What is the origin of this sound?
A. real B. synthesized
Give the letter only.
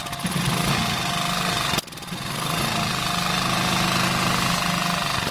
A